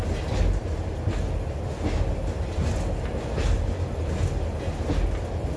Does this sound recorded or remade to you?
recorded